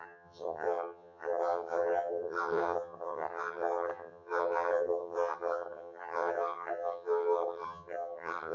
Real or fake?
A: fake